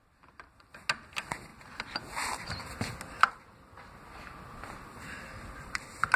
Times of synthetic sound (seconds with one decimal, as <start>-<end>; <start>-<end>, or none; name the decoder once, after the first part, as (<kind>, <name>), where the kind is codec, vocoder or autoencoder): none